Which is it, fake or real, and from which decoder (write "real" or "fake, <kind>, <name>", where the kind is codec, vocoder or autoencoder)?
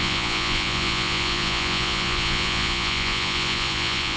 fake, vocoder, Vocos